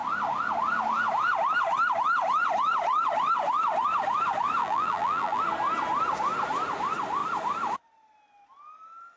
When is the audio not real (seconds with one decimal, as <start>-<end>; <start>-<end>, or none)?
4.6-5.4